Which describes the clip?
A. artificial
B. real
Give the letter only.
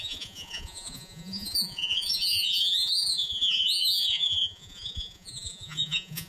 A